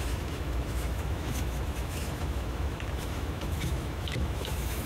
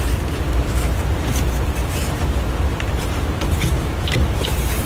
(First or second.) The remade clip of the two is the first